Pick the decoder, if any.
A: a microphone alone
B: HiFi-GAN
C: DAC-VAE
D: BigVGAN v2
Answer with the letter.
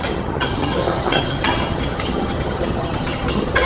B